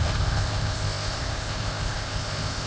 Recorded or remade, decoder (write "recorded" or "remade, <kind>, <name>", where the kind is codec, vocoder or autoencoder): remade, codec, ZipCodec